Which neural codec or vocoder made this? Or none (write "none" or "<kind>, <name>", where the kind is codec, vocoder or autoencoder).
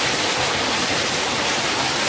none